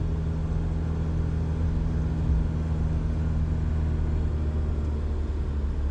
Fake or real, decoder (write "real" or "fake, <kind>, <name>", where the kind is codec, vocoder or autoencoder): real